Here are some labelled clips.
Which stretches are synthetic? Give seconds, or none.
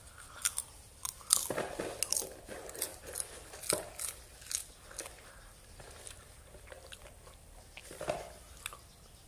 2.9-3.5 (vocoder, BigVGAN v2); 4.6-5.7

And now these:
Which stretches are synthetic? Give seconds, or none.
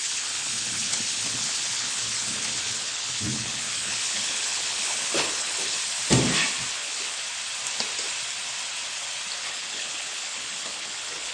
0.0-5.8 (codec, HILCodec); 6.7-7.2; 9.4-11.3